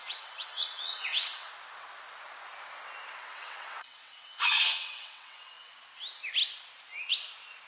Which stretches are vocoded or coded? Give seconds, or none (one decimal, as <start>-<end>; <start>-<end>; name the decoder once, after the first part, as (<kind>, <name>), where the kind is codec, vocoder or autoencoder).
0.0-1.5 (vocoder, WaveNeXt); 3.2-5.7